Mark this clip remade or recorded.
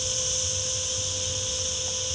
recorded